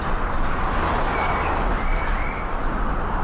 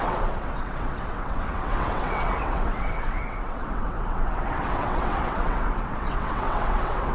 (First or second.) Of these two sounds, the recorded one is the first